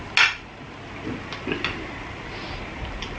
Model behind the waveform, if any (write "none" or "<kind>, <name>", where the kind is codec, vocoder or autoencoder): none